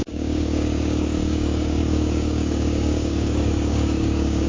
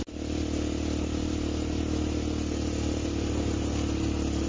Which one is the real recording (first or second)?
second